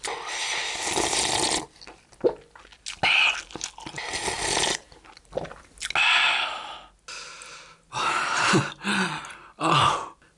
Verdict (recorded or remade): recorded